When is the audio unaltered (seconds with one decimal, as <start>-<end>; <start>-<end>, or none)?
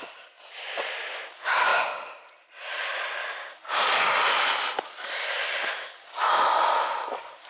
0.0-3.2; 3.9-7.5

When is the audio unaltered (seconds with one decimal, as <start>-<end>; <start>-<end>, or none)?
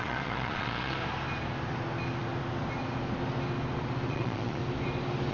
1.0-4.1; 4.6-5.3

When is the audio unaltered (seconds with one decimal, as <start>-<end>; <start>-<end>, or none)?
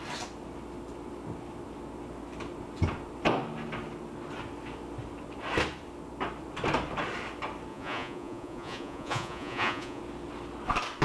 0.0-7.7; 10.0-11.0